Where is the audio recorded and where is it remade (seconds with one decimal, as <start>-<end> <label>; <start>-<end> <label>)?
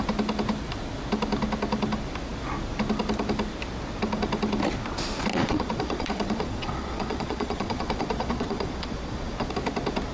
0.0-5.3 recorded; 5.3-9.5 remade; 9.5-10.1 recorded